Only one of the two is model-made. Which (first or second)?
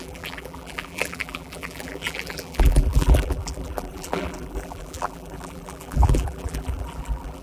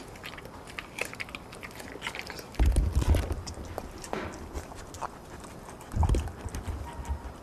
first